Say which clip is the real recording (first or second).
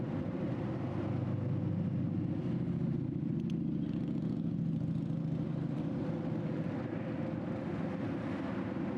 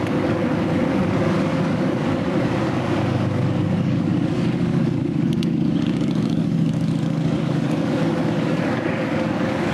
first